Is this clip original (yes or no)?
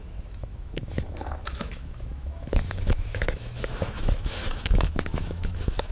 no